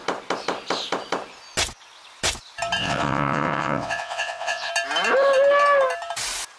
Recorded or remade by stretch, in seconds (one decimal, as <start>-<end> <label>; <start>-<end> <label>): 0.0-2.8 recorded; 2.8-4.7 remade; 4.7-6.6 recorded